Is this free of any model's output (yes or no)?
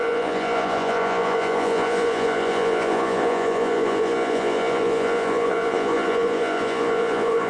no